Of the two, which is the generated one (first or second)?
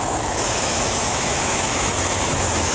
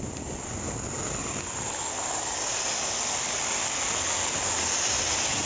first